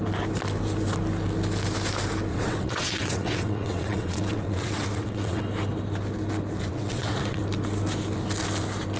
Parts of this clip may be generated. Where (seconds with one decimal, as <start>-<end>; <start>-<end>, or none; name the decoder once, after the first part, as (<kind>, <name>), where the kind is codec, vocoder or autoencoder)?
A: 2.3-5.4 (vocoder, WaveNeXt); 6.7-7.4